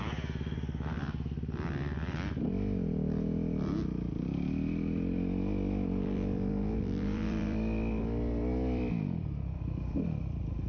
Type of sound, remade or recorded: remade